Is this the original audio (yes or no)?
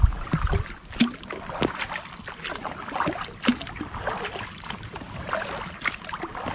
yes